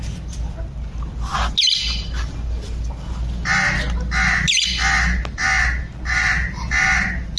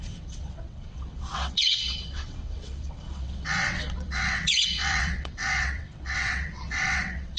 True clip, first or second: first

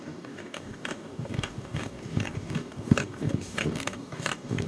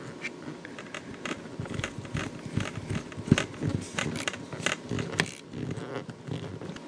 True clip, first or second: second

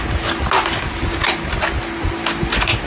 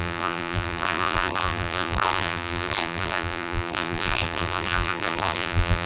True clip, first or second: first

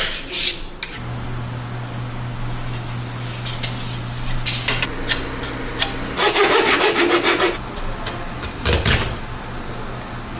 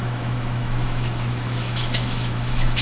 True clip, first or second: first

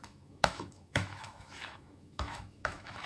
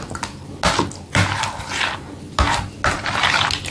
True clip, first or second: second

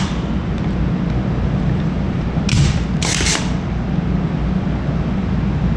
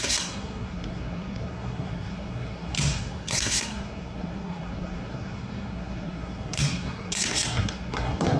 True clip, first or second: first